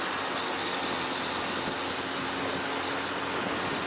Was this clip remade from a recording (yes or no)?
no